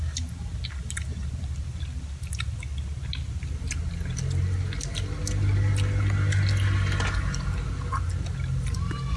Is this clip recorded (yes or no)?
yes